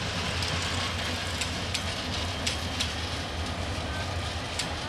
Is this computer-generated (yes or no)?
no